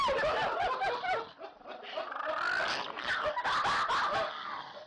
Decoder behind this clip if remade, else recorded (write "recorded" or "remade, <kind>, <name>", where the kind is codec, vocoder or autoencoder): recorded